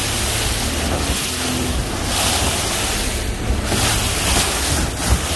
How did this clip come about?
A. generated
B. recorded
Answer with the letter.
B